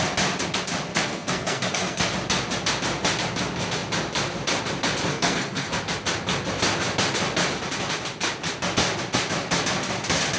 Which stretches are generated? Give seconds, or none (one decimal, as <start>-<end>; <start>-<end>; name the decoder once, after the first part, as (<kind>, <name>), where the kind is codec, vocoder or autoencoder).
0.9-2.1 (codec, SNAC); 5.1-5.7